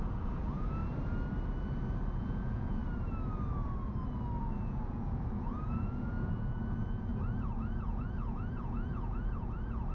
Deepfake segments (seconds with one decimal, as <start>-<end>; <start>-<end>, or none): 0.0-0.8; 2.2-2.8; 4.4-9.9